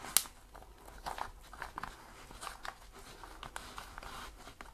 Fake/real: real